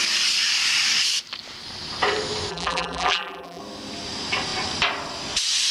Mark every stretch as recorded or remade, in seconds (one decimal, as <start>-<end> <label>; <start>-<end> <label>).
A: 0.0-2.5 recorded; 2.5-3.6 remade; 3.6-5.7 recorded